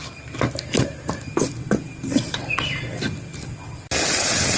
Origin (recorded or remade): recorded